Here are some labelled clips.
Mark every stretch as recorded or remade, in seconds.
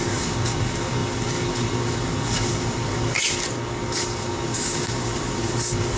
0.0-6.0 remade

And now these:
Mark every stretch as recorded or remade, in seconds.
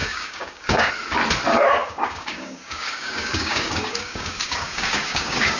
0.0-0.9 remade; 0.9-1.8 recorded; 1.8-5.6 remade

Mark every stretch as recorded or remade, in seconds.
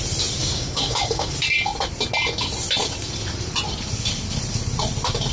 0.0-0.4 recorded; 0.4-1.3 remade; 1.3-5.3 recorded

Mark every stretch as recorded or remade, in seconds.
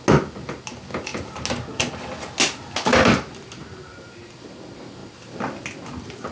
0.0-6.3 recorded